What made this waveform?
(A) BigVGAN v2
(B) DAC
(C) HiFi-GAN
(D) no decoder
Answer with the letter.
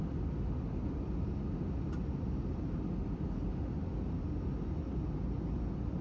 D